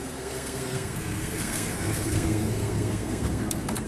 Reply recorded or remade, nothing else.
remade